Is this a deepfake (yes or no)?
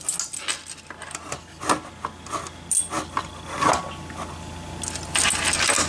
no